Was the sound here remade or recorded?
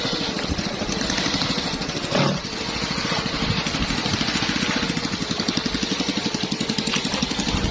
recorded